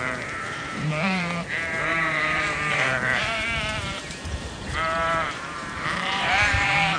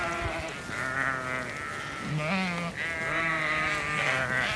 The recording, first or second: second